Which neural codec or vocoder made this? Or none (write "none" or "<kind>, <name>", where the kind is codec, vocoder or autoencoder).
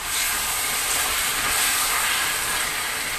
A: none